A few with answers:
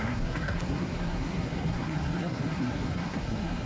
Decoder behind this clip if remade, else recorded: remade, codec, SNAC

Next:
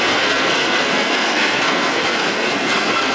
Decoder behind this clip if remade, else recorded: remade, codec, SNAC